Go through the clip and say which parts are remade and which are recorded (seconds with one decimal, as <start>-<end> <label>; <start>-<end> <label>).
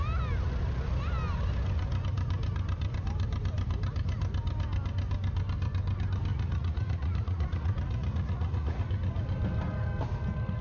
0.0-6.3 recorded; 6.3-8.8 remade; 8.8-10.6 recorded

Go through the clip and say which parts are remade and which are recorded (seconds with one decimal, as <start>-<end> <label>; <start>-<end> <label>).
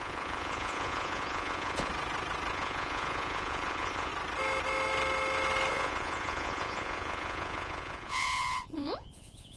0.0-1.9 remade; 1.9-2.5 recorded; 2.5-4.1 remade; 4.1-5.7 recorded; 5.7-9.6 remade